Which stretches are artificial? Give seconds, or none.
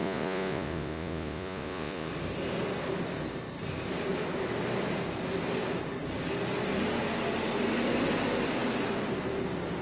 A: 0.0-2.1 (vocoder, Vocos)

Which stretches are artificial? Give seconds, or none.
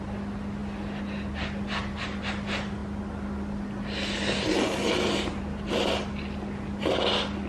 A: none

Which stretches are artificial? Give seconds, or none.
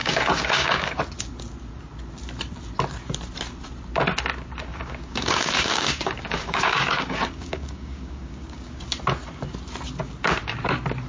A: 0.0-1.0 (codec, DAC); 4.7-8.8